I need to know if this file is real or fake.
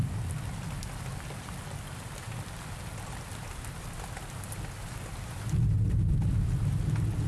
real